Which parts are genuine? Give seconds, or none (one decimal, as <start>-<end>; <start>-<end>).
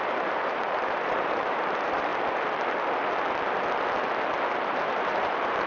2.1-4.5